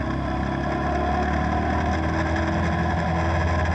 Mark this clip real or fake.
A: real